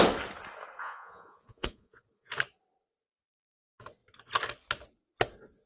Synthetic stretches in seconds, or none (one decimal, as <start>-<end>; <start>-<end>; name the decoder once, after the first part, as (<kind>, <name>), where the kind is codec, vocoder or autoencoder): 0.8-2.3 (vocoder, Vocos)